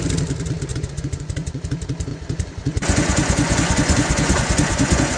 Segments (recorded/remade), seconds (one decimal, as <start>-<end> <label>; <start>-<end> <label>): 0.0-0.7 recorded; 0.7-1.6 remade; 1.6-2.1 recorded; 2.1-5.2 remade